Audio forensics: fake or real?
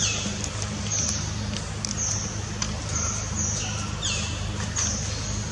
real